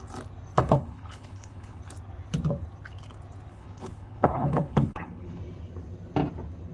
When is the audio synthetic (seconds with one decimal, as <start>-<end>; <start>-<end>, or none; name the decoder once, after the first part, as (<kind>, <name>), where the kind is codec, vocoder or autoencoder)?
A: 0.6-1.8 (codec, HILCodec); 3.5-5.4